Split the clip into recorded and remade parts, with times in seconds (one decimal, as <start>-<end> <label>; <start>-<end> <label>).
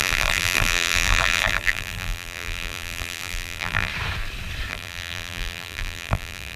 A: 0.0-3.9 remade; 3.9-4.7 recorded; 4.7-6.6 remade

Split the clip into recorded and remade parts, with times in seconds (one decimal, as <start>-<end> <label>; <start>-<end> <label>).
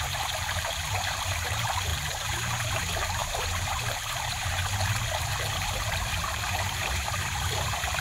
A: 0.0-4.6 remade; 4.6-5.2 recorded; 5.2-8.0 remade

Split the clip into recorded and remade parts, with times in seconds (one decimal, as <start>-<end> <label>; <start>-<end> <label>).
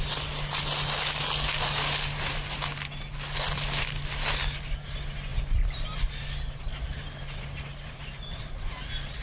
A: 0.0-5.3 recorded; 5.3-8.7 remade; 8.7-9.2 recorded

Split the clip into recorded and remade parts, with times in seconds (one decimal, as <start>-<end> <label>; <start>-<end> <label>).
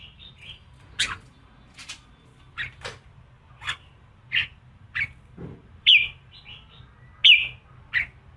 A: 0.0-1.8 recorded; 1.8-6.8 remade; 6.8-8.4 recorded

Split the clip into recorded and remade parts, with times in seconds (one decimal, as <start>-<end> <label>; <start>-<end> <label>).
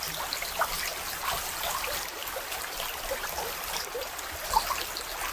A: 0.0-1.2 recorded; 1.2-4.4 remade; 4.4-5.3 recorded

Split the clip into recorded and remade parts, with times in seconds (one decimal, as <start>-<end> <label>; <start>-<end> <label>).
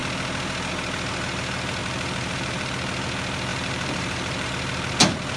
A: 0.0-1.8 recorded; 1.8-2.7 remade; 2.7-3.5 recorded; 3.5-4.5 remade; 4.5-5.4 recorded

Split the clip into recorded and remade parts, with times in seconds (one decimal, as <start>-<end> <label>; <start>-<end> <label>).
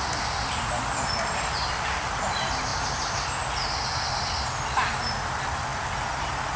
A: 0.0-6.6 recorded